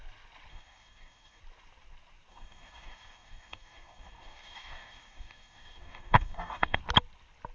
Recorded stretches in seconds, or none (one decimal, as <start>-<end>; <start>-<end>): 0.0-0.5; 1.4-2.3; 6.8-7.5